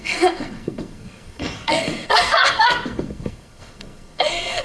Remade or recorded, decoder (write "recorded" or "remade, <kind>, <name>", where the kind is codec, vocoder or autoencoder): remade, codec, SNAC